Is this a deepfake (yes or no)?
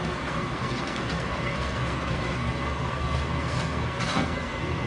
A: yes